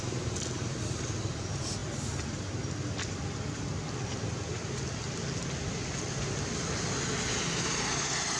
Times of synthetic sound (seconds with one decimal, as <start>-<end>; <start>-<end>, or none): none